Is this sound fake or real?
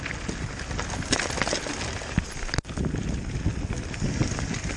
real